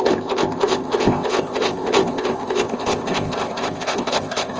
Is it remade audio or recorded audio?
remade